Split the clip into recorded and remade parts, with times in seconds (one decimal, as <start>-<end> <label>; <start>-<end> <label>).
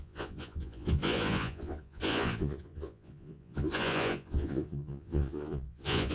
0.0-6.1 remade